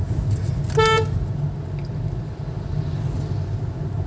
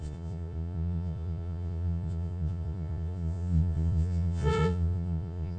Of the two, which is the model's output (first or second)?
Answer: second